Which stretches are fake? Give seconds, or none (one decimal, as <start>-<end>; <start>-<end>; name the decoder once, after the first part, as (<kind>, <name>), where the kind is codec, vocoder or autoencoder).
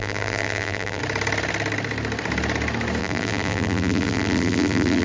0.0-1.0 (vocoder, BigVGAN v2); 3.0-5.0